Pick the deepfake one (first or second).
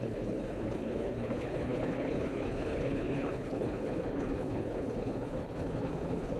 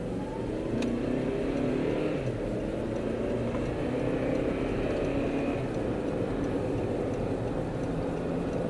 first